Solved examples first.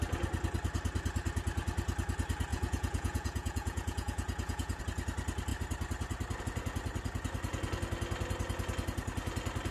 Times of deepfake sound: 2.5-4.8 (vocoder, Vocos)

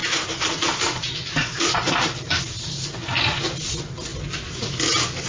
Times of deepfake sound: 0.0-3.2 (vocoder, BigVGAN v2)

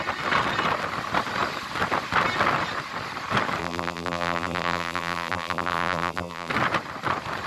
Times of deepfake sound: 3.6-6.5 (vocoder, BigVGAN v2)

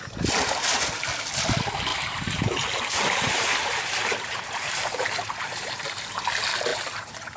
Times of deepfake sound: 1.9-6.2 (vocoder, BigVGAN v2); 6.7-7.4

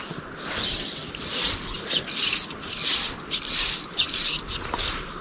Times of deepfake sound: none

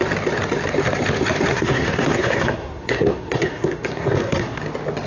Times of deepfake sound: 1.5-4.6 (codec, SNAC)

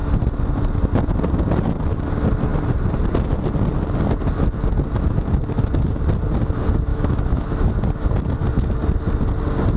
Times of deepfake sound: 6.9-7.7 (autoencoder, DAC-VAE)

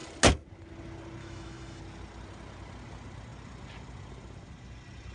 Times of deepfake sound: 1.2-1.8 (autoencoder, DAC-VAE)